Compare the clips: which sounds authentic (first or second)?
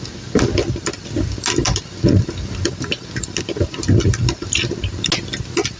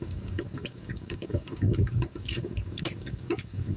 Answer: first